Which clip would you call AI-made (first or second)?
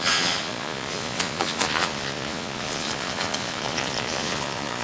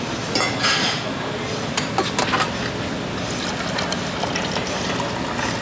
first